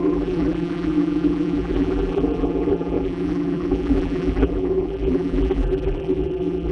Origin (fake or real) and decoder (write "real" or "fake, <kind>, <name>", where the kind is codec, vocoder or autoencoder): fake, vocoder, BigVGAN v2